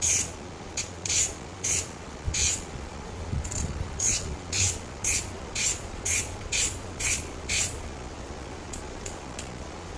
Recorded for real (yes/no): no